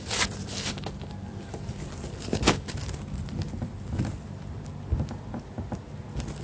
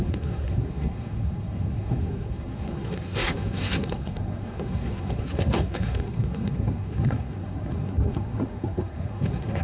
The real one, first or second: first